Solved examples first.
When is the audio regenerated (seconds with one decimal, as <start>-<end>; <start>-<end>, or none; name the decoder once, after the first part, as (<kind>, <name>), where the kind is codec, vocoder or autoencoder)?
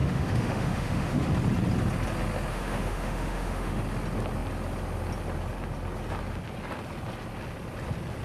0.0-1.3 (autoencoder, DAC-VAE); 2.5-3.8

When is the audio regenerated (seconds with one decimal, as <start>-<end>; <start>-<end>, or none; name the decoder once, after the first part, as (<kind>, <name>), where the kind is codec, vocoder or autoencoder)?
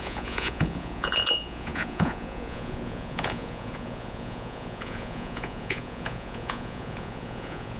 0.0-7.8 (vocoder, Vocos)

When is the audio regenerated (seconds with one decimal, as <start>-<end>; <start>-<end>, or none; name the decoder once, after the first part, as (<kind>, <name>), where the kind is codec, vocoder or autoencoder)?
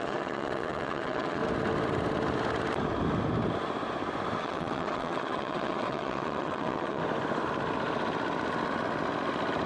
0.0-1.4 (vocoder, WaveNeXt); 4.4-7.0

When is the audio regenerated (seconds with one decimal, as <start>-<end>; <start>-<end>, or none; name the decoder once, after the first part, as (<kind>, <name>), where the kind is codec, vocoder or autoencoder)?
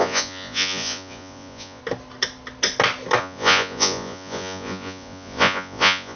0.0-1.8 (vocoder, Vocos); 3.2-6.2